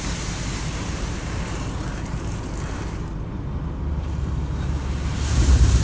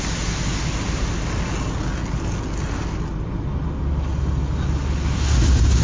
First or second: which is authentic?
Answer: second